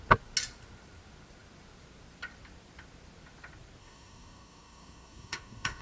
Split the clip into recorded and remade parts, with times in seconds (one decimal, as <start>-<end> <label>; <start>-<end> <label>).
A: 0.0-3.8 recorded; 3.8-5.8 remade